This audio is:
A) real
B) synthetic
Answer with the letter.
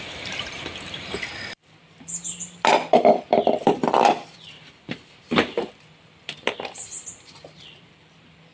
B